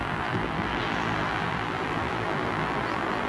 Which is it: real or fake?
fake